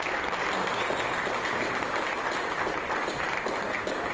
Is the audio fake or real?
real